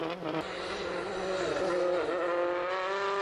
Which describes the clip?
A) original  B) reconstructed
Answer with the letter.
A